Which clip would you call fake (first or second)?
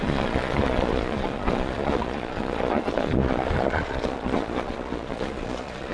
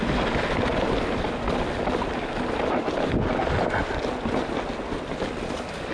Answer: first